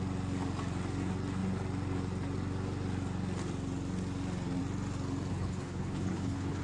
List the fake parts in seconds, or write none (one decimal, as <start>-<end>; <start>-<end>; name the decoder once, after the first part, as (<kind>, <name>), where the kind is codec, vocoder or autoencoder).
5.3-6.6 (codec, HILCodec)